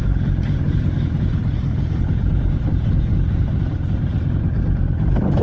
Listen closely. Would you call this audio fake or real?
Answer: fake